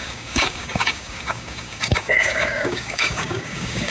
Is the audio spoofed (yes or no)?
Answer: yes